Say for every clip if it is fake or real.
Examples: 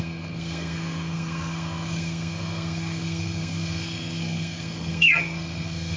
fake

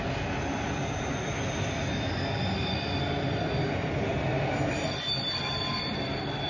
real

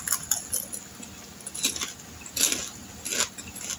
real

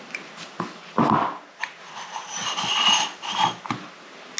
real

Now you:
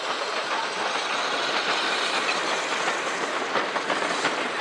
real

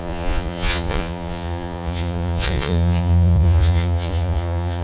fake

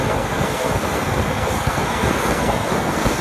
fake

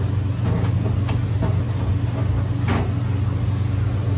real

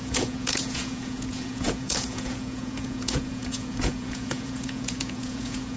fake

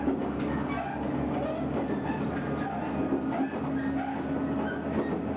real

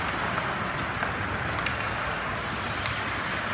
real